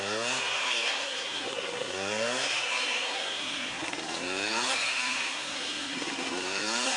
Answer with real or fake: fake